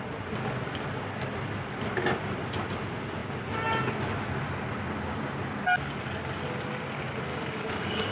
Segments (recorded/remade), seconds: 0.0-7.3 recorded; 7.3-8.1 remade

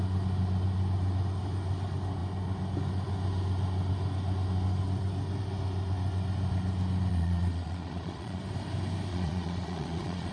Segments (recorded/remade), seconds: 0.0-7.1 recorded; 7.1-8.4 remade; 8.4-9.1 recorded; 9.1-10.3 remade

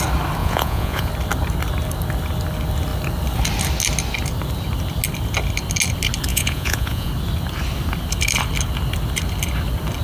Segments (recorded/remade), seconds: 0.0-0.4 recorded; 0.4-1.1 remade; 1.1-6.3 recorded; 6.3-7.1 remade; 7.1-10.0 recorded

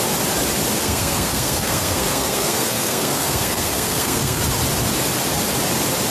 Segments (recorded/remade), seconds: 0.0-0.8 recorded; 0.8-4.4 remade; 4.4-6.1 recorded

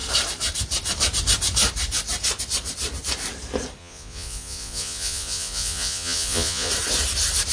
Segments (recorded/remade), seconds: 0.0-3.8 recorded; 3.8-6.7 remade; 6.7-7.5 recorded